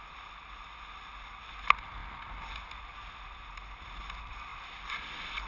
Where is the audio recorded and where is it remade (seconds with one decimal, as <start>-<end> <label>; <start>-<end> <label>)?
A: 0.0-5.5 recorded